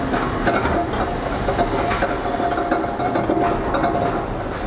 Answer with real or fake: real